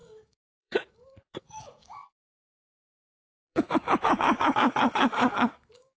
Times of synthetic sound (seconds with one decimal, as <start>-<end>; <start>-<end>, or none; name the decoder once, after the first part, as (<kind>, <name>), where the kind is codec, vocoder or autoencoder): 0.0-6.0 (codec, DAC)